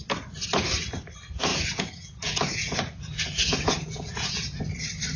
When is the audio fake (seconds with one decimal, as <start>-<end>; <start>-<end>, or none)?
1.5-4.6